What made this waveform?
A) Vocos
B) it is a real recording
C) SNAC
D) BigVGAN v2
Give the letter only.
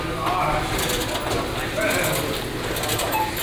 B